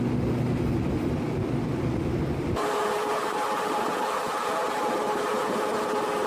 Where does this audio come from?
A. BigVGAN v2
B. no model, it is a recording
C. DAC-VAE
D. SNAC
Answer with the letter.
B